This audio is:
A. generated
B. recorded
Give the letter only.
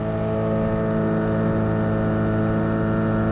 B